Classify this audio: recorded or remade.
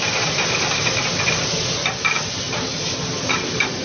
recorded